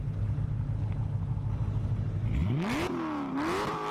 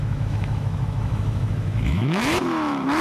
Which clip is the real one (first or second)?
first